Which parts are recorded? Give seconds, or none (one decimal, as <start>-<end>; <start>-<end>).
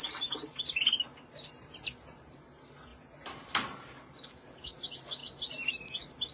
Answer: 0.0-6.3